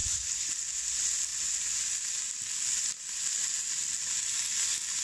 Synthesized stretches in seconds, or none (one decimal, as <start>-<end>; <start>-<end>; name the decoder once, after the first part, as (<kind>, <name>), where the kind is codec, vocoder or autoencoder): 0.0-0.5 (codec, HILCodec)